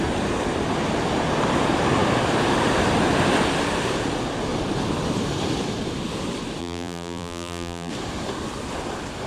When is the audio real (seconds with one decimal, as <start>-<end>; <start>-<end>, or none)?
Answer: 0.0-6.6; 7.9-9.3